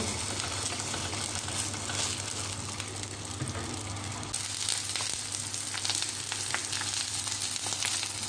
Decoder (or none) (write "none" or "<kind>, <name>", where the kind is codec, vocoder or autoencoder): none